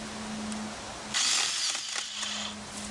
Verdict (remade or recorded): recorded